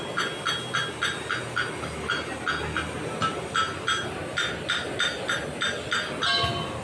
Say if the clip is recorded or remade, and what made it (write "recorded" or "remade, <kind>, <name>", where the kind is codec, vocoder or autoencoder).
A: recorded